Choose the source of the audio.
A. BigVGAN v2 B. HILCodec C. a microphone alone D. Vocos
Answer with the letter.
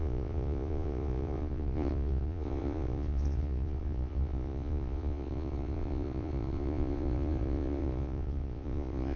D